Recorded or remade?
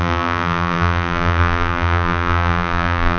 remade